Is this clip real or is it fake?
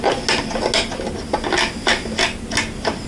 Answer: real